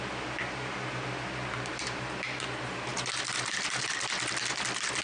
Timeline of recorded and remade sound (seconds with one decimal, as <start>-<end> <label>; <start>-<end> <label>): 0.0-5.0 recorded